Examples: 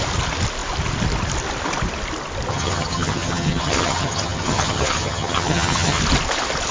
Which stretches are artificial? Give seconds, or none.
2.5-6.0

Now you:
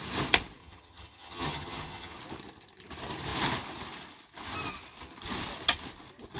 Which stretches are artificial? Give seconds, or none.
0.6-2.2

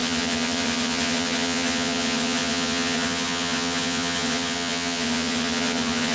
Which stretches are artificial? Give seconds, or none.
0.0-6.1

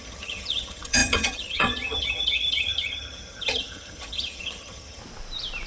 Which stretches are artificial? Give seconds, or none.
0.0-5.0

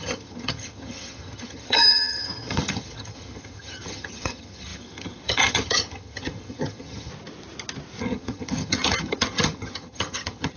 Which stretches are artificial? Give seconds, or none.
0.0-7.1; 8.0-10.6

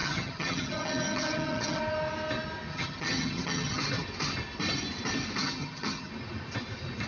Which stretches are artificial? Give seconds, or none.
0.0-1.8; 2.7-3.8; 5.4-6.1

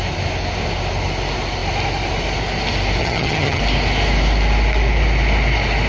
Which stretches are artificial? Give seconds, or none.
3.0-3.6